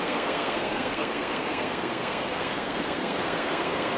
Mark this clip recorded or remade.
remade